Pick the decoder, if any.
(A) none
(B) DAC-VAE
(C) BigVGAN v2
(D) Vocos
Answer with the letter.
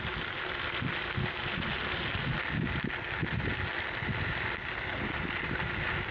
A